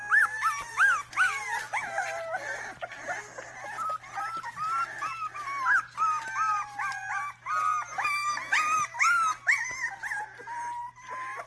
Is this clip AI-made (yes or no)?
no